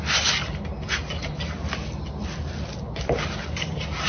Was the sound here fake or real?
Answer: real